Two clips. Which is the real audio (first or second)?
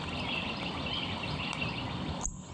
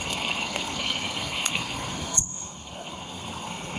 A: first